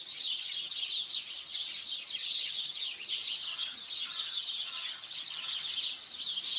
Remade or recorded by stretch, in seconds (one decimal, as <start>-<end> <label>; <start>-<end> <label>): 0.0-0.9 remade; 0.9-2.2 recorded; 2.2-3.1 remade; 3.1-3.5 recorded; 3.5-5.7 remade; 5.7-6.6 recorded